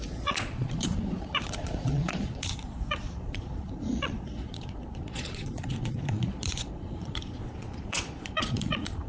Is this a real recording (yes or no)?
no